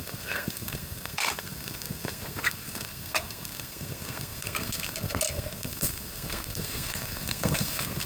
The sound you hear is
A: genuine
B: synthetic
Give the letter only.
B